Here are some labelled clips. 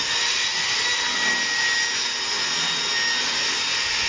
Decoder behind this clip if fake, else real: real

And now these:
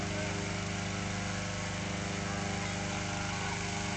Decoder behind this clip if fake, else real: real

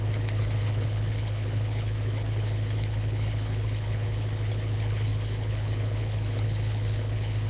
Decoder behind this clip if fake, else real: fake, codec, HILCodec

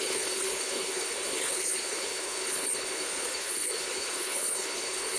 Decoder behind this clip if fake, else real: fake, codec, HILCodec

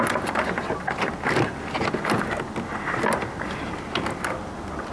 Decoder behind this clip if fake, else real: real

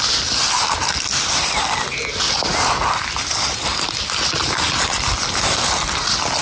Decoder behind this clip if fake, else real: real